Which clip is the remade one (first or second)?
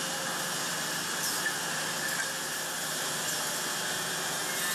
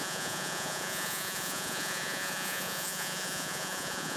second